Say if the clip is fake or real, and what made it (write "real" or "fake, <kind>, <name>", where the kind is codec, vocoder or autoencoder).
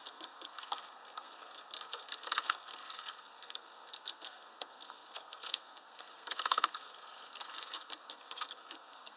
fake, codec, SNAC